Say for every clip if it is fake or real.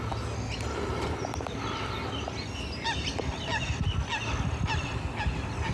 real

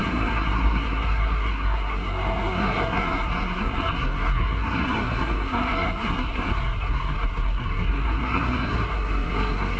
fake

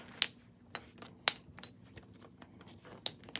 real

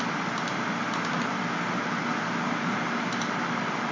real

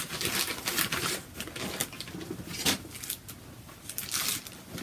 real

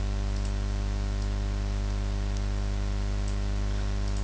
real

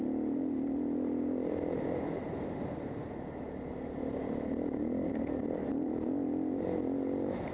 real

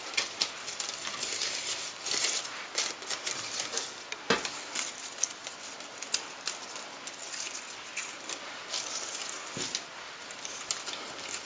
real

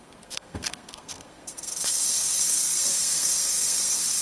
fake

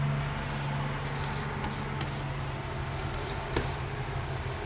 real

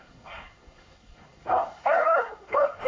fake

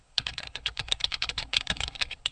fake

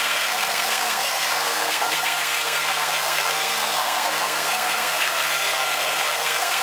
fake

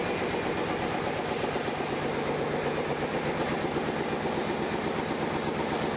real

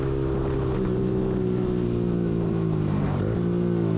real